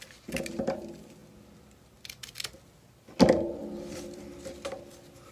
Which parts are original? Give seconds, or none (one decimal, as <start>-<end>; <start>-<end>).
0.0-3.6; 4.2-5.3